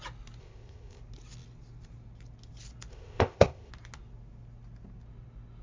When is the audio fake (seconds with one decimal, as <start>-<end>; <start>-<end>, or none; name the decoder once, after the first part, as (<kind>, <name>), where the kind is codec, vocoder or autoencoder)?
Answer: 0.4-1.0 (codec, ZipCodec); 2.9-3.7